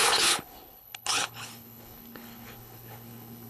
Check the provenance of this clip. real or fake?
fake